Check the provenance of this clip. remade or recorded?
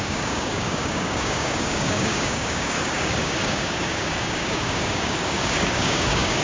remade